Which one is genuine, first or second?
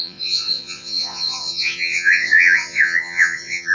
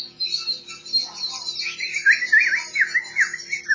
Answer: second